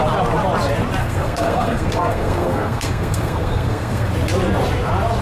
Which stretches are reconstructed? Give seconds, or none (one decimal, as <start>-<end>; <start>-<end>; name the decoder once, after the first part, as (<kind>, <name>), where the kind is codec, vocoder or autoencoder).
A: 1.0-4.1 (codec, SNAC)